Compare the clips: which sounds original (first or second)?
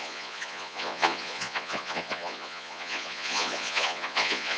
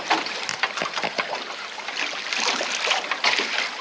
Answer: second